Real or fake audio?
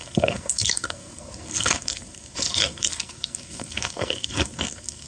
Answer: fake